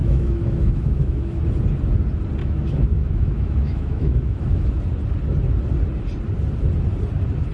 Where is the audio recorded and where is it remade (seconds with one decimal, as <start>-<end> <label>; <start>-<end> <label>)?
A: 0.0-1.4 remade; 1.4-2.4 recorded; 2.4-4.8 remade; 4.8-7.5 recorded